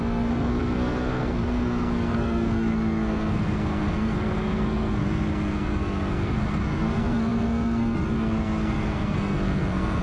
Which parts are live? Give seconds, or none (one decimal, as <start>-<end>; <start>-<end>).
none